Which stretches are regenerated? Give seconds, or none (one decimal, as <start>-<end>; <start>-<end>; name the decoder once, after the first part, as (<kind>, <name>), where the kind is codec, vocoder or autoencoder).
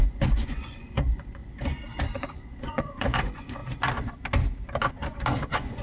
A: 0.0-1.4 (vocoder, Vocos); 2.1-3.6; 4.9-5.8